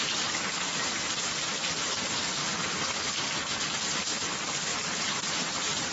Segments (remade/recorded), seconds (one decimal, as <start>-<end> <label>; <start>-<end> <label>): 0.0-4.7 recorded; 4.7-5.5 remade; 5.5-5.9 recorded